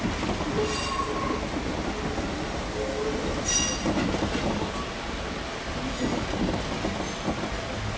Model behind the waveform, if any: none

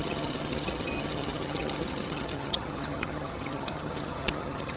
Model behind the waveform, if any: vocoder, HiFi-GAN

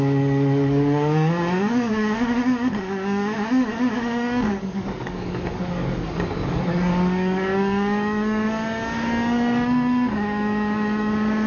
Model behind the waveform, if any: codec, DAC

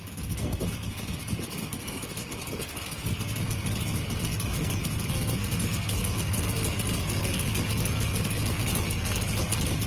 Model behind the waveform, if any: codec, SNAC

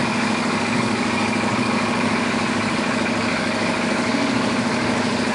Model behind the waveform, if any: codec, DAC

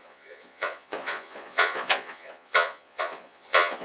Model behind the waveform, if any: vocoder, Vocos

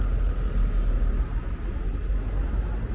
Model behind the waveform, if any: none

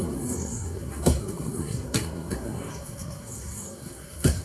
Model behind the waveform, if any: codec, SNAC